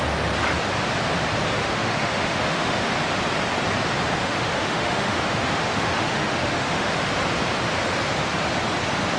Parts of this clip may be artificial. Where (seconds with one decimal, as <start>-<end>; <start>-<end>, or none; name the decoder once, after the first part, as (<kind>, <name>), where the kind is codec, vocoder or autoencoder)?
1.6-2.9 (autoencoder, DAC-VAE); 4.2-6.9